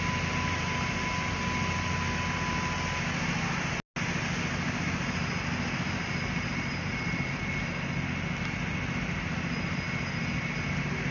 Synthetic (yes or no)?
no